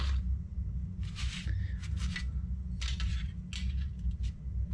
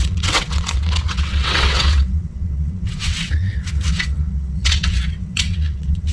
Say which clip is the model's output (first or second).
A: second